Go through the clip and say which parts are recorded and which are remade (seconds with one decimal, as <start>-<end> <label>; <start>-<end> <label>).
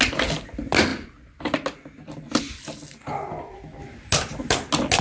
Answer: 0.0-5.0 recorded